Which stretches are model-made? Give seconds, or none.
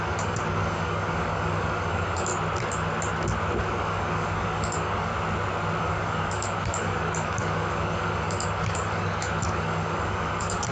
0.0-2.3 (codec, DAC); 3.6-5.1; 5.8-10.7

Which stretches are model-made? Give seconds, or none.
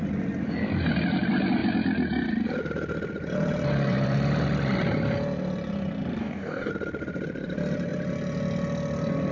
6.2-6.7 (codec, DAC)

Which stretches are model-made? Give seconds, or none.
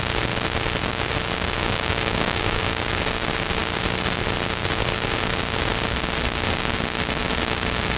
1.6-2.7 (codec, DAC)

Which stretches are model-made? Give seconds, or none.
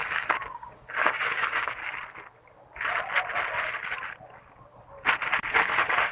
0.0-1.8 (codec, DAC); 5.5-6.1